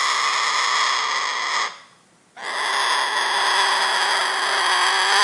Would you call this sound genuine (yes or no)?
yes